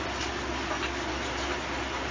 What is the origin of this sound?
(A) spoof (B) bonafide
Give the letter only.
B